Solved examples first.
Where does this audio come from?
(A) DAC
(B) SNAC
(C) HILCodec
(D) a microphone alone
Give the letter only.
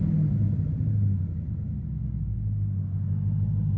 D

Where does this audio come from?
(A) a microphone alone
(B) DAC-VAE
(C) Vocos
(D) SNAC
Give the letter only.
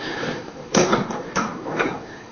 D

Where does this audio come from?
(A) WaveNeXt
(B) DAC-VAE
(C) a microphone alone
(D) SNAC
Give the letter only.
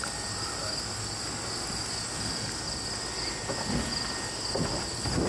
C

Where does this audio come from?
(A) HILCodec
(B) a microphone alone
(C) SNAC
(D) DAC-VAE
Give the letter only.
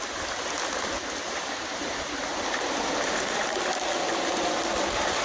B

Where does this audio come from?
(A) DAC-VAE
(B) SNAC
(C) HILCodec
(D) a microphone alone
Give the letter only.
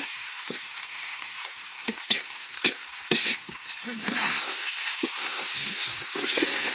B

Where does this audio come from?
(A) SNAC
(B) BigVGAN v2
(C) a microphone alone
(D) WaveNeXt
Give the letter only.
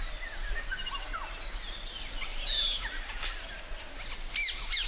C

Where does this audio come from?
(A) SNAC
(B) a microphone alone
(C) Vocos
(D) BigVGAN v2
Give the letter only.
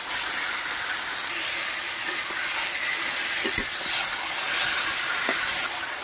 B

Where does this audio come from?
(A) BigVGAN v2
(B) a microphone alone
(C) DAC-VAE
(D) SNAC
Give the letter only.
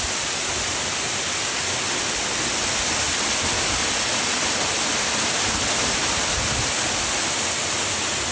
B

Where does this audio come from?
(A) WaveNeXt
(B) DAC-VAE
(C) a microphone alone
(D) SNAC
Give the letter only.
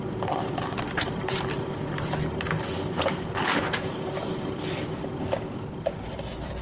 C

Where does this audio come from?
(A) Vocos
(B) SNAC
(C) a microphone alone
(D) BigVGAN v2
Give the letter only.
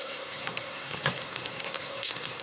B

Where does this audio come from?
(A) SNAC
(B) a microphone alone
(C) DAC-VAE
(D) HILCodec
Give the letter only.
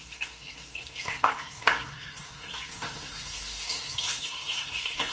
A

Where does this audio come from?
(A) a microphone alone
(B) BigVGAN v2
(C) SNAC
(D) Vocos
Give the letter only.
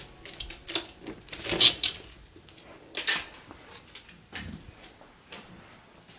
A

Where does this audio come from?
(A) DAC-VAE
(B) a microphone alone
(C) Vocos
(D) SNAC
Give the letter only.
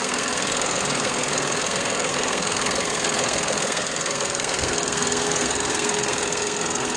D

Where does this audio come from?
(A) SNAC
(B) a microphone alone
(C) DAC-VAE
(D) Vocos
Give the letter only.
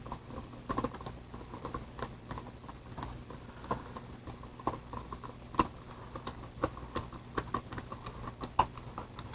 B